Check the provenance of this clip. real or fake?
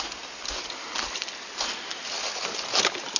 real